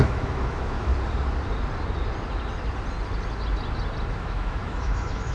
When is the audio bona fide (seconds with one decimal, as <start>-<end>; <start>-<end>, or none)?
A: 0.9-4.1